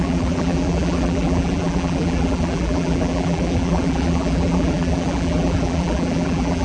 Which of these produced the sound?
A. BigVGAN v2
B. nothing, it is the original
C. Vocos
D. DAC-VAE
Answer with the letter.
A